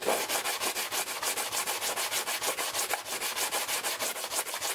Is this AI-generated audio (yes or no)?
no